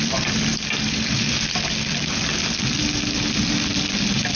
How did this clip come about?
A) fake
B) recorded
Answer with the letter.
A